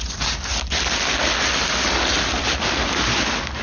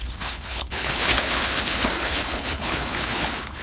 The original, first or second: first